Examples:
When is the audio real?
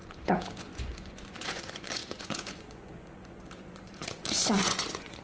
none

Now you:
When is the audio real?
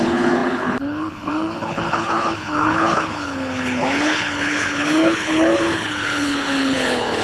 none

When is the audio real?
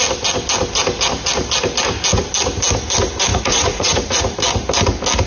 0.0-3.3; 4.2-5.3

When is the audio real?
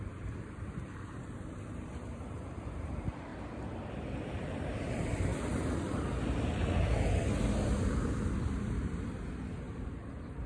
3.3-3.9; 5.3-9.5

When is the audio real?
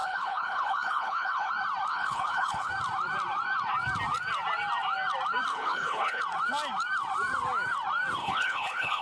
1.5-1.9; 2.7-5.5; 6.2-8.2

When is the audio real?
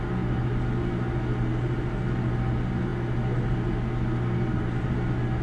0.0-5.4